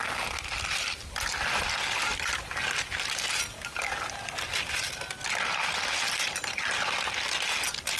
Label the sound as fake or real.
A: real